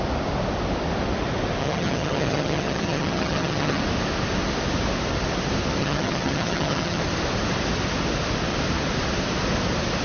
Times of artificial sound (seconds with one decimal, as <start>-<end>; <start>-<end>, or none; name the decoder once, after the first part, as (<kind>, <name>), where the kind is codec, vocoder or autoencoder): 1.6-3.8 (vocoder, HiFi-GAN); 5.8-7.0